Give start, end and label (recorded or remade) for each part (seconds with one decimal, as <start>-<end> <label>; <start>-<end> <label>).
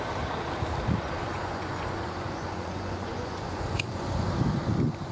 0.0-1.2 recorded; 1.2-4.3 remade; 4.3-5.1 recorded